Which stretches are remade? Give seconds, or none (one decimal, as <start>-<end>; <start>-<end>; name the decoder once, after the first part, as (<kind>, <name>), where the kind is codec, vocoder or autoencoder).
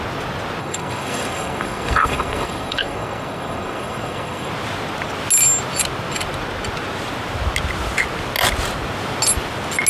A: 0.6-4.5 (codec, SNAC)